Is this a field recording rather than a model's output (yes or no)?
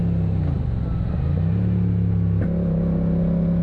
yes